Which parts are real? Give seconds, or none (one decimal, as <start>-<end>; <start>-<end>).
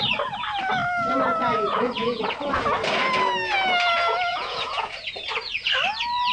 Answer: 0.0-1.4; 2.2-4.3; 4.9-6.3